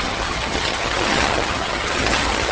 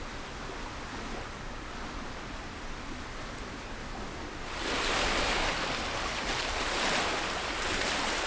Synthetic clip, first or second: first